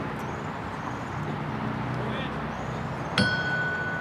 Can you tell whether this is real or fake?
real